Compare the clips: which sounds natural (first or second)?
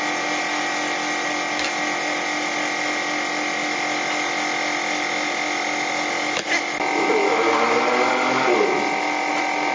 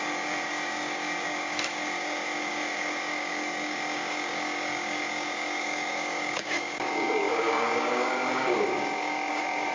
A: first